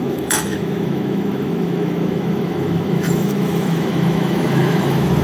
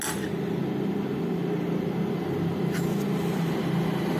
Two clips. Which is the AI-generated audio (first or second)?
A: first